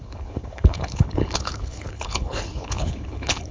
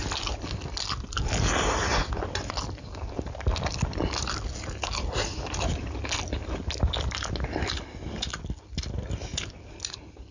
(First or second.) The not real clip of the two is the first